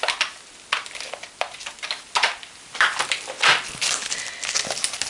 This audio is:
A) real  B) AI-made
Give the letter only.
A